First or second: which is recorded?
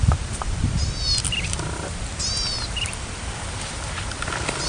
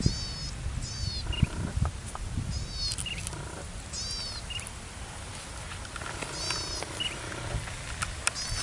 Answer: second